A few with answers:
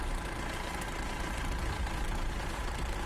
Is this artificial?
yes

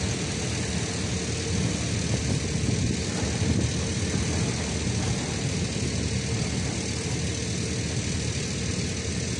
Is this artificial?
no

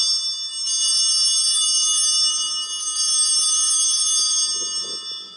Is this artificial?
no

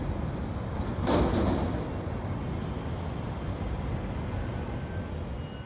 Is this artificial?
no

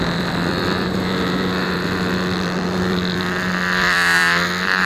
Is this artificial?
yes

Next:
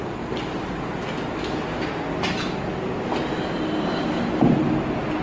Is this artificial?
no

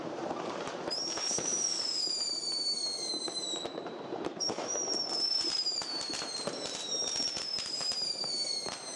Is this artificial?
yes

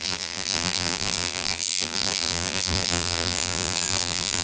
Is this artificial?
yes